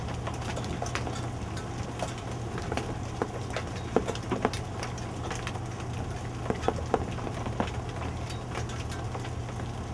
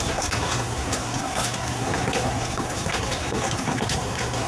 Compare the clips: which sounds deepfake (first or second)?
second